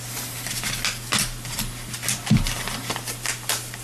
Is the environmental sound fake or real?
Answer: real